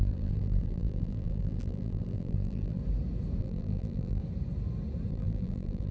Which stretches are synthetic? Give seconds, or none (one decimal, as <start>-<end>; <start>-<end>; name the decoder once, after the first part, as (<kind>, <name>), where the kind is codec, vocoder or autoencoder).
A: 0.0-2.8 (vocoder, BigVGAN v2); 3.4-4.2; 5.1-5.9